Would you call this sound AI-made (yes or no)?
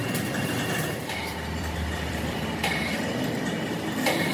yes